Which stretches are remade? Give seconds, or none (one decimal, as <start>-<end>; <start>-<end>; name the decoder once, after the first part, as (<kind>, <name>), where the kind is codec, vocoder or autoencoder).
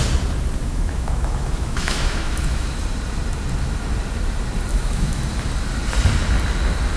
0.6-2.8 (autoencoder, DAC-VAE); 4.7-5.2